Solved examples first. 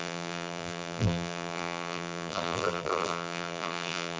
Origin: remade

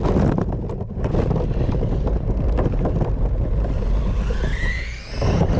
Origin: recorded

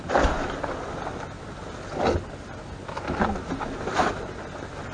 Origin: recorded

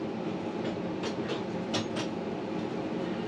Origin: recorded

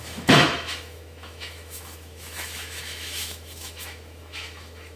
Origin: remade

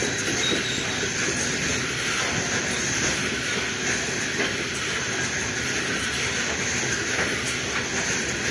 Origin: remade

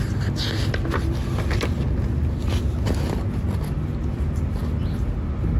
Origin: recorded